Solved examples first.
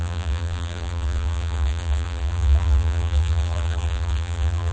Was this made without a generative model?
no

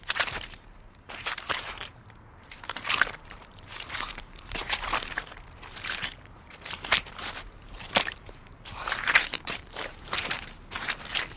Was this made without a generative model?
no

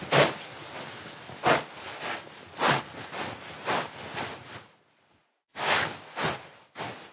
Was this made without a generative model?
yes